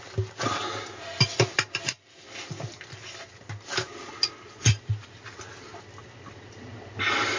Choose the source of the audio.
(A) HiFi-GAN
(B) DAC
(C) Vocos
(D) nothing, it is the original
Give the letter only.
D